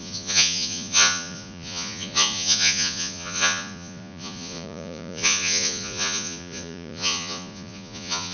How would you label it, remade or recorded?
remade